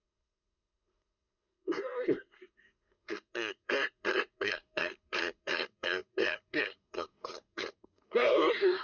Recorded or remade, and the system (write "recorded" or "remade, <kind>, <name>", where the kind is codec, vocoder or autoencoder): remade, codec, SNAC